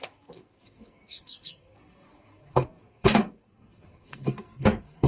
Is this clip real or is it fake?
fake